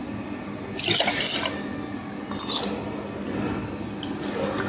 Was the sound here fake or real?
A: real